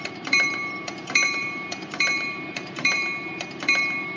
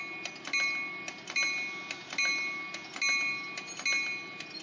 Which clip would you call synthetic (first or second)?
first